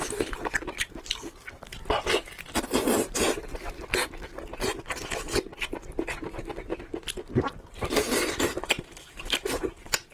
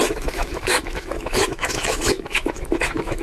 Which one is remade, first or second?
second